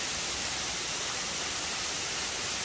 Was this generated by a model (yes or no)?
no